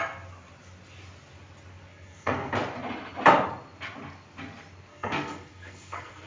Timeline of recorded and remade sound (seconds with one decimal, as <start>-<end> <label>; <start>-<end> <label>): 0.0-1.9 recorded; 1.9-2.5 remade; 2.5-4.9 recorded; 4.9-6.3 remade